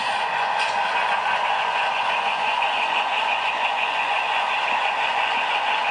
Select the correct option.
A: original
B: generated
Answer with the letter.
B